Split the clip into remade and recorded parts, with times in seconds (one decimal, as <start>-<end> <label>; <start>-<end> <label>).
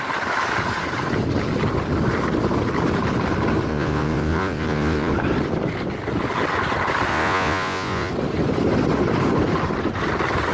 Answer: 0.0-3.7 recorded; 3.7-5.1 remade; 5.1-7.1 recorded; 7.1-8.1 remade; 8.1-10.5 recorded